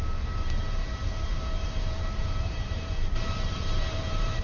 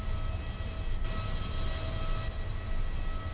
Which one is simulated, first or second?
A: first